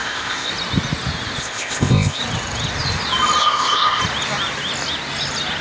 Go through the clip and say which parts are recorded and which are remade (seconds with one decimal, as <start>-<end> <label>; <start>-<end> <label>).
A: 0.0-0.5 remade; 0.5-1.4 recorded; 1.4-2.2 remade; 2.2-3.4 recorded; 3.4-4.0 remade; 4.0-5.6 recorded

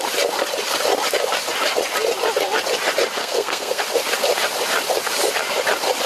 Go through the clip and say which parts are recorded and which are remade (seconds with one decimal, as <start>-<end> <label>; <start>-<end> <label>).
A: 0.0-3.2 recorded; 3.2-3.8 remade; 3.8-6.1 recorded

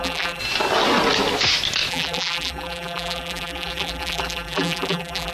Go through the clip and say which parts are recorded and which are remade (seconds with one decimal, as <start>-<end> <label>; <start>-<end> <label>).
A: 0.0-0.4 remade; 0.4-1.9 recorded; 1.9-5.3 remade

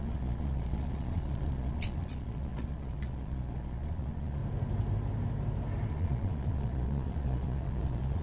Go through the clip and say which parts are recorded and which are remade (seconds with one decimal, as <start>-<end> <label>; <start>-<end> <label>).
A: 0.0-4.4 remade; 4.4-5.9 recorded; 5.9-8.2 remade

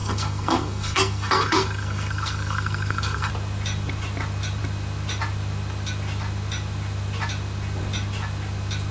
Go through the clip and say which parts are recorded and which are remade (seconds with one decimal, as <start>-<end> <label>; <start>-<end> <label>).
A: 0.0-3.3 remade; 3.3-8.9 recorded

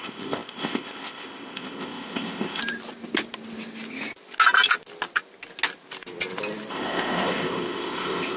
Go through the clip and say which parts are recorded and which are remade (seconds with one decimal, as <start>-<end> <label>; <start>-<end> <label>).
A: 0.0-2.6 remade; 2.6-6.7 recorded; 6.7-8.4 remade